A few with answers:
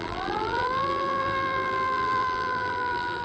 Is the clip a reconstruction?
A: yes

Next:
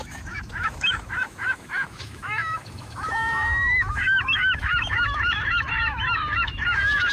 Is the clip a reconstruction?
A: yes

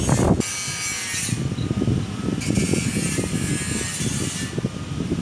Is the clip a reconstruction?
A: no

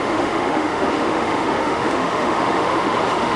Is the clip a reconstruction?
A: yes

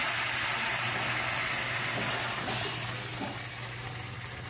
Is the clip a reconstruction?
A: no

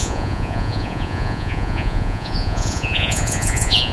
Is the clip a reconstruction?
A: yes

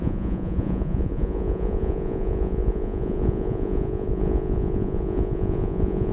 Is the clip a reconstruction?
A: yes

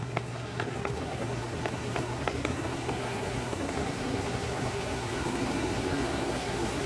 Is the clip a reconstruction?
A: yes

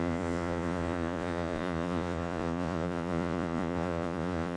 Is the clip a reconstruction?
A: yes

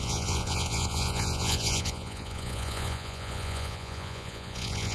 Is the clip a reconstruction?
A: yes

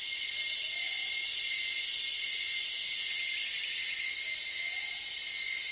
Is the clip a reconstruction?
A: no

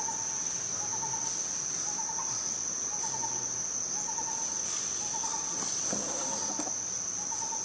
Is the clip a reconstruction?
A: no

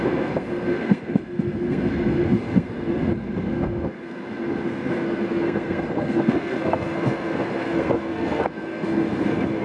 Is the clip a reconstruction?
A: yes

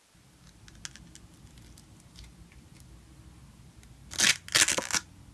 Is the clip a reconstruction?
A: no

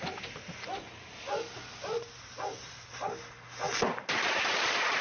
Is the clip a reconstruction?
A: no